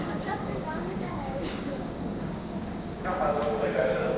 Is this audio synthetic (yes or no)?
yes